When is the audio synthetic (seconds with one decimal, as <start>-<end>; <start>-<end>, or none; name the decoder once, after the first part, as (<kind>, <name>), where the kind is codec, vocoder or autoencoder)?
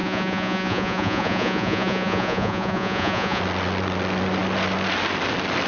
0.0-3.4 (vocoder, Vocos)